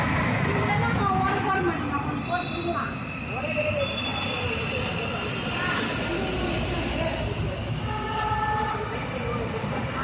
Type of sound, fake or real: real